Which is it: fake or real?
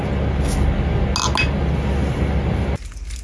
real